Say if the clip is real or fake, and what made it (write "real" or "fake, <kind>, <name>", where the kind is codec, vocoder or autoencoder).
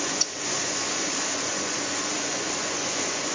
fake, vocoder, Vocos